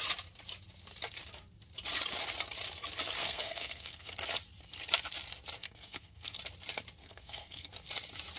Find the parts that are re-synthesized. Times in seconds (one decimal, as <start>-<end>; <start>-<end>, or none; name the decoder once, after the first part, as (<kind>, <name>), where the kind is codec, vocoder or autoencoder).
3.2-4.1 (codec, SNAC); 5.6-6.4; 7.0-7.7